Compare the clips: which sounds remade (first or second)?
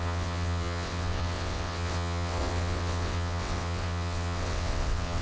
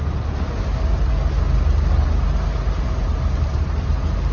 first